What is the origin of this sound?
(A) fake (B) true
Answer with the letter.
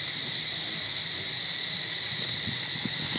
B